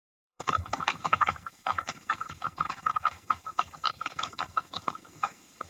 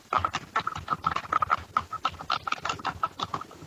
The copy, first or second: first